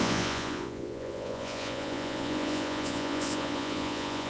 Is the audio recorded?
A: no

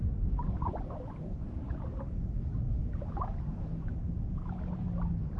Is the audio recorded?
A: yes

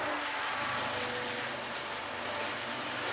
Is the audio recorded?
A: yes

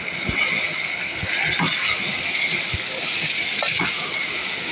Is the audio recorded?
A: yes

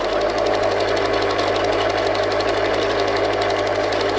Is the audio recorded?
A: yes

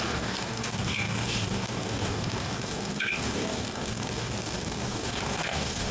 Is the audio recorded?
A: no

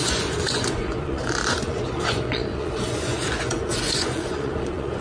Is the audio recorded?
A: no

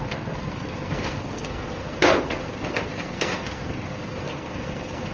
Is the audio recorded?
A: no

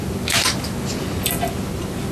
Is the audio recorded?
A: yes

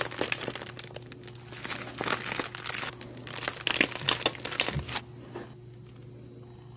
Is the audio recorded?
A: yes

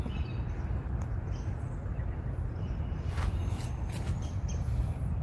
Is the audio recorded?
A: yes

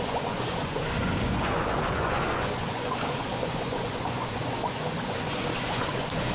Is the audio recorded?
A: no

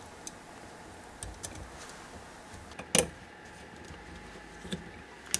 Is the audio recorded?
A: yes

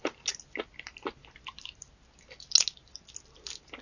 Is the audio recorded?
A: yes